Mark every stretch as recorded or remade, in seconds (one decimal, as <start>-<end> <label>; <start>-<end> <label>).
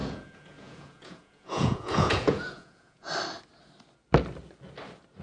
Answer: 0.0-3.1 remade; 3.1-5.2 recorded